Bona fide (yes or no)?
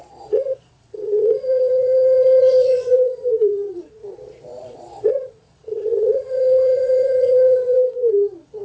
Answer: no